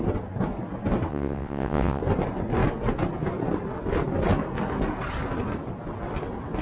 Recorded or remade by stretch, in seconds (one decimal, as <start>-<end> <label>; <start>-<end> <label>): 0.0-1.1 recorded; 1.1-2.0 remade; 2.0-6.6 recorded